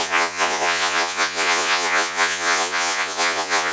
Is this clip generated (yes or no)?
yes